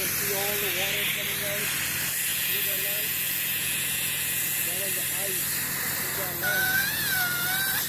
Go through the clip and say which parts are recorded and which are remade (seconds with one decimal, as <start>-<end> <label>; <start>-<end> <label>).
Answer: 0.0-2.3 recorded; 2.3-4.8 remade; 4.8-6.5 recorded; 6.5-7.0 remade; 7.0-7.9 recorded